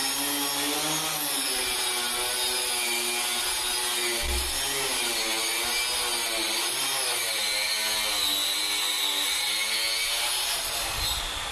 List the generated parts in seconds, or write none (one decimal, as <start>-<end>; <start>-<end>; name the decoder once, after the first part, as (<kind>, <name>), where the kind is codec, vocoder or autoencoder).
none